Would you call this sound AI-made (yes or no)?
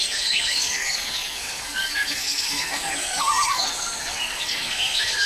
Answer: yes